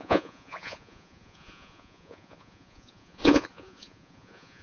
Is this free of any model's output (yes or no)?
no